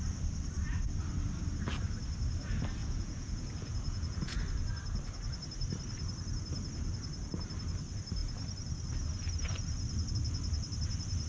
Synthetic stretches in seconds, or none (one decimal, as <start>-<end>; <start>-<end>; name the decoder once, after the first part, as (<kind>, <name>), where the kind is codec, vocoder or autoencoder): 2.8-4.4 (vocoder, Vocos)